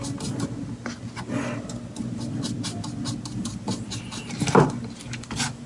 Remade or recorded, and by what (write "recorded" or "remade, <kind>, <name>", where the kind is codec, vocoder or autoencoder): recorded